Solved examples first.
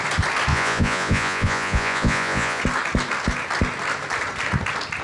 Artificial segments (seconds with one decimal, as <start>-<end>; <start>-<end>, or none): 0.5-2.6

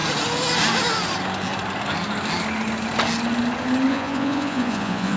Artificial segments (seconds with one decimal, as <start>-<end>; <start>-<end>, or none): 3.9-5.2

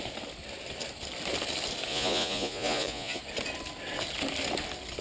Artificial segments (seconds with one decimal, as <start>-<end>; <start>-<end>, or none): 1.9-3.2

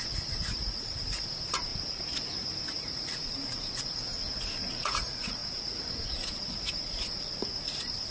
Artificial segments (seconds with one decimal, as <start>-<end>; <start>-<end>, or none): 0.0-1.7; 2.7-4.1; 4.7-8.1